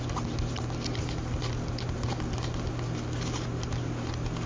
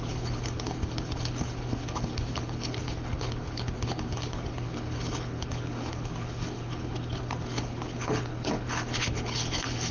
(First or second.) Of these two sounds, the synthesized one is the second